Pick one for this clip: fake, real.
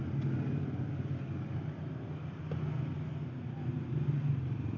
real